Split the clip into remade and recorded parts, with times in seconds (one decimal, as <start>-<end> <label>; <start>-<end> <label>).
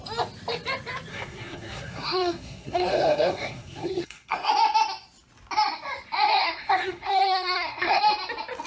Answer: 0.0-1.1 recorded; 1.1-4.5 remade; 4.5-6.3 recorded; 6.3-8.0 remade; 8.0-8.7 recorded